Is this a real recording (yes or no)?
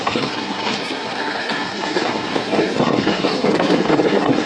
no